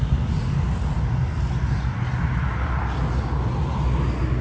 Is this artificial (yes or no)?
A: no